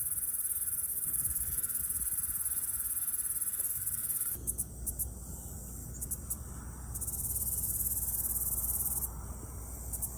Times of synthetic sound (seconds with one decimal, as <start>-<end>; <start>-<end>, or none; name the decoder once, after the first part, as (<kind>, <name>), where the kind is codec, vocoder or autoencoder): 0.9-1.8 (codec, SNAC); 3.5-4.7